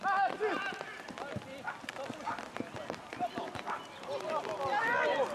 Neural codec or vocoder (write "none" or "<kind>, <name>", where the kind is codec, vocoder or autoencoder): none